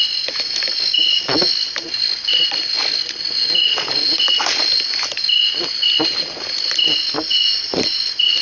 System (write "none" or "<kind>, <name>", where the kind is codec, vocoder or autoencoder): none